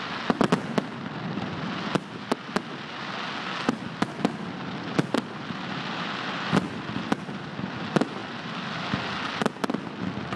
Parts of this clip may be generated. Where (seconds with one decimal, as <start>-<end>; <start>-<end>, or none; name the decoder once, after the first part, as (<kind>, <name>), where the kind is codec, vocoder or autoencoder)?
none

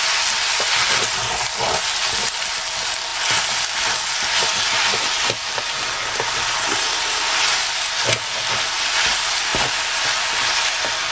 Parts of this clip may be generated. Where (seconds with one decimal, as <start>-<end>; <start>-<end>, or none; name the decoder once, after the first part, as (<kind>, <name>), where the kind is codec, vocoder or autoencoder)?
none

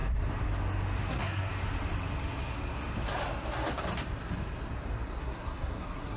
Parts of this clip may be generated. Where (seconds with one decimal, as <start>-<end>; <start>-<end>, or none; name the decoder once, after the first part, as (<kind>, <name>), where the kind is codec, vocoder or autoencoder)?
1.1-1.5 (codec, SNAC); 5.2-6.2

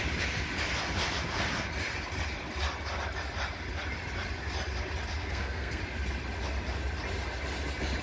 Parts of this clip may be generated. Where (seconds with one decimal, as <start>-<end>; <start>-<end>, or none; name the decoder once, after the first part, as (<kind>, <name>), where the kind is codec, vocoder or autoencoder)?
5.2-5.8 (codec, SNAC)

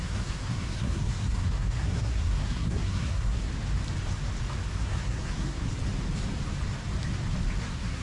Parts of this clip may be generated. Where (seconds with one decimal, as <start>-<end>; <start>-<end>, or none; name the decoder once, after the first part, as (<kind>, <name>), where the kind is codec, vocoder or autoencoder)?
0.0-3.5 (codec, SNAC); 4.8-5.7; 7.6-8.0

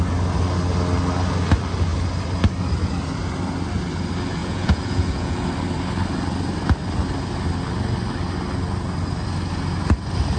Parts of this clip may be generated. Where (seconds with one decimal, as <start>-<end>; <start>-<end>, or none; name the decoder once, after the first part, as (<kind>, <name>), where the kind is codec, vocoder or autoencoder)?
4.4-5.4 (vocoder, Vocos)

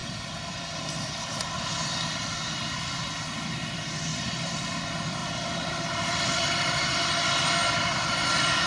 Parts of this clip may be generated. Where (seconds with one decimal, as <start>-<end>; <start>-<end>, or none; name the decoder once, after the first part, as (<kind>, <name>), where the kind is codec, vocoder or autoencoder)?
0.0-0.9 (vocoder, BigVGAN v2); 4.1-4.7; 5.2-7.5